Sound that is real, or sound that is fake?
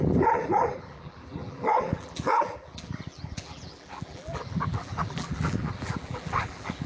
fake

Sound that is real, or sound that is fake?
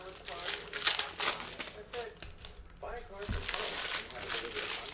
real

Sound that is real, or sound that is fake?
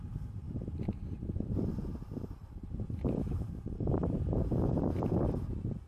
fake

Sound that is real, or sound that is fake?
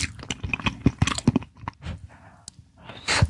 real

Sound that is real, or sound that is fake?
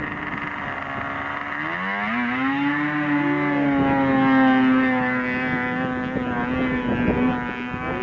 real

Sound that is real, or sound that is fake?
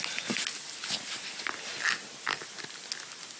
real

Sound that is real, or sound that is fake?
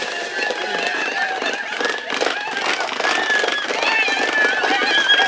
real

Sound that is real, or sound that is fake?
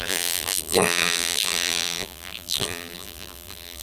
fake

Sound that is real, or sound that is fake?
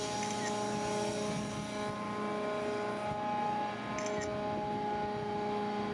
real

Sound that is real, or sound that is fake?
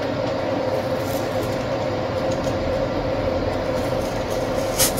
real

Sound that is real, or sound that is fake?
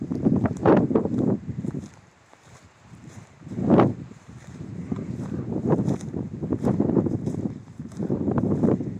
fake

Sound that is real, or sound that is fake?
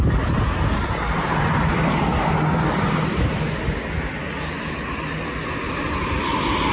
real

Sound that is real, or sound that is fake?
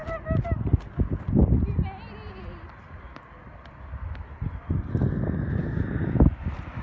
real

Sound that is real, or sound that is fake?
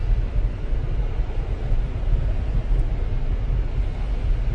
real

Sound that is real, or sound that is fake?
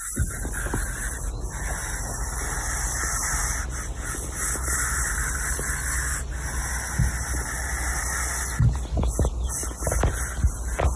real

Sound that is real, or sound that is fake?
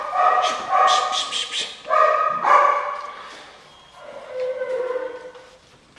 fake